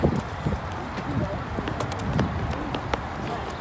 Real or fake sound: real